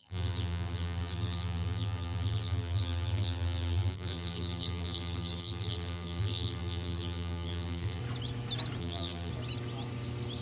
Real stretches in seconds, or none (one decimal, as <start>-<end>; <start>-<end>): 8.0-8.8; 9.3-10.4